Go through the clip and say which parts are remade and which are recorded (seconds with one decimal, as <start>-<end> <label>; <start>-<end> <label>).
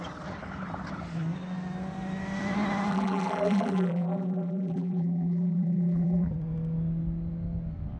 0.0-2.9 recorded; 2.9-6.3 remade; 6.3-8.0 recorded